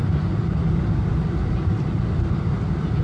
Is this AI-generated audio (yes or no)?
no